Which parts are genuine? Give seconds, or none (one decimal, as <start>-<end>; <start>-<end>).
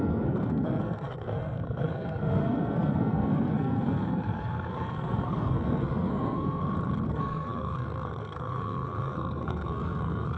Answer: 6.6-7.1